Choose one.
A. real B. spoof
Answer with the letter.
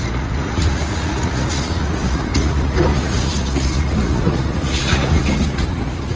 B